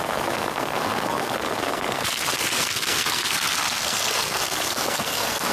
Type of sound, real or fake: fake